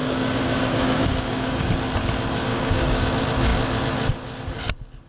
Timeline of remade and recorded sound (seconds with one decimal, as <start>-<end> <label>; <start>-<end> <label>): 0.0-1.7 remade; 1.7-2.5 recorded; 2.5-3.1 remade; 3.1-5.1 recorded